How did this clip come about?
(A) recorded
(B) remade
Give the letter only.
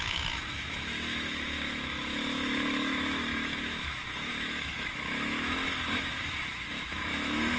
B